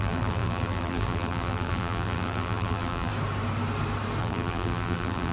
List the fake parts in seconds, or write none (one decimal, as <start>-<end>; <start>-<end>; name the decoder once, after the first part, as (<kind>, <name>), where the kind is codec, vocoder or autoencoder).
0.0-3.1 (vocoder, BigVGAN v2); 4.2-5.3